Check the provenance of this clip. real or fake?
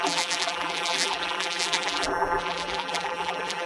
fake